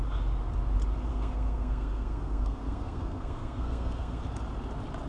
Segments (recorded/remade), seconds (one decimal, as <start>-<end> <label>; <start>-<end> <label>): 0.0-1.1 recorded; 1.1-4.2 remade; 4.2-5.1 recorded